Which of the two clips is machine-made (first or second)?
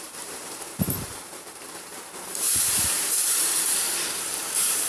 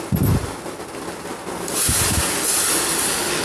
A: first